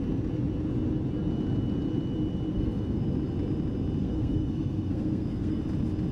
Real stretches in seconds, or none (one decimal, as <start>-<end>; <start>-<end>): 0.0-2.5; 3.0-4.0; 5.6-6.1